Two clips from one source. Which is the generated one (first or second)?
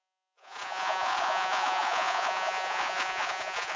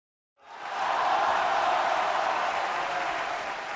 first